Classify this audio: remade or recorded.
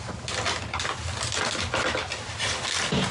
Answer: recorded